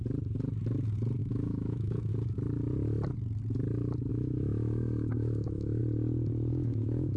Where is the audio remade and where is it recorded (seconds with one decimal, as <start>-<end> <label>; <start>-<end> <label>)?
0.0-1.2 recorded; 1.2-2.1 remade; 2.1-4.1 recorded; 4.1-5.8 remade; 5.8-6.5 recorded; 6.5-7.2 remade